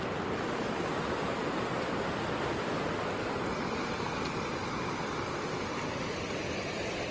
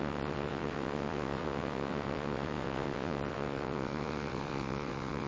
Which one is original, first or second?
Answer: first